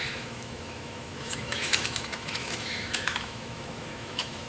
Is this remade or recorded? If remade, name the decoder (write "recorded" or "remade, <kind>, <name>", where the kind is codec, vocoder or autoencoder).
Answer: remade, autoencoder, DAC-VAE